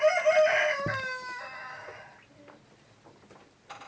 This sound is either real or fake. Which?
real